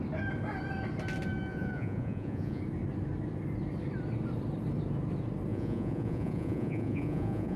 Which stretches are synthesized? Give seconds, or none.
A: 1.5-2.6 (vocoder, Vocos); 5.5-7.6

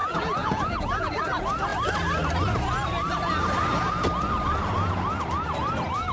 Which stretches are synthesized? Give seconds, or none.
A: 0.0-1.2 (vocoder, Vocos)

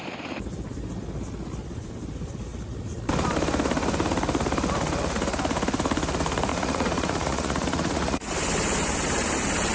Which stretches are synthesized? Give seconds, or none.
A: 6.5-8.3 (vocoder, Vocos)